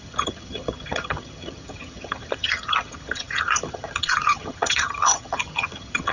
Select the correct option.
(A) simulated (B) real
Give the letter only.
A